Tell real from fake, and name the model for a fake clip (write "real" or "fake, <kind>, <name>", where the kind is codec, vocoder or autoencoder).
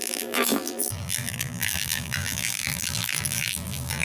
fake, vocoder, BigVGAN v2